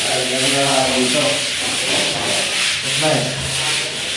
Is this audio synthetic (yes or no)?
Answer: no